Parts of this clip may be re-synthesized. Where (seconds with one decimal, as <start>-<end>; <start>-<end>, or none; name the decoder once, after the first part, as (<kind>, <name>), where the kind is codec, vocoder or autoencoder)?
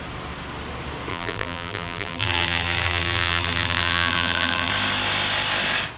1.1-4.7 (vocoder, BigVGAN v2)